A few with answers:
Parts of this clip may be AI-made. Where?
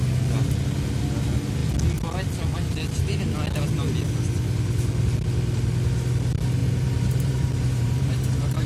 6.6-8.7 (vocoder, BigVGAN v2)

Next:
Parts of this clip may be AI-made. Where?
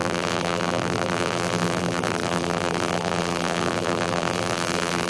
0.0-5.1 (vocoder, BigVGAN v2)